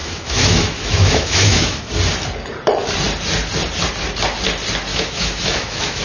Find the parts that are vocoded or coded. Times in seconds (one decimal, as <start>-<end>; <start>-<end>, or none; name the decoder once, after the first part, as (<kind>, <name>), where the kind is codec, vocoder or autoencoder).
0.0-1.9 (autoencoder, DAC-VAE); 4.9-6.0